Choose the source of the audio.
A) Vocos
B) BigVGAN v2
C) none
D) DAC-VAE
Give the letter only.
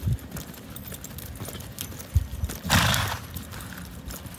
C